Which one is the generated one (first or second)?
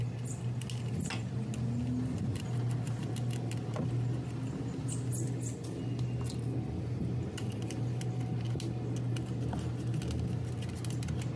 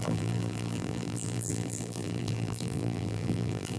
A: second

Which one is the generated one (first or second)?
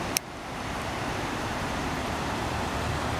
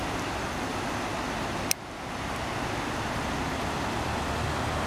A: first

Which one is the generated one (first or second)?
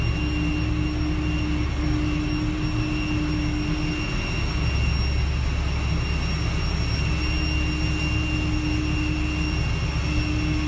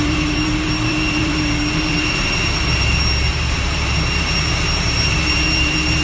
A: second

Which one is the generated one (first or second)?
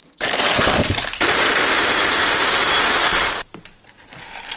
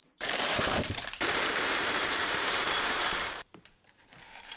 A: second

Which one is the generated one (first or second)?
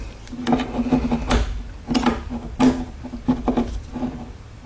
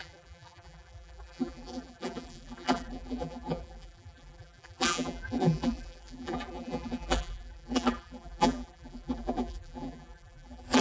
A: second